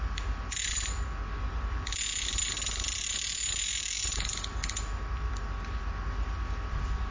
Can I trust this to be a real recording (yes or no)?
yes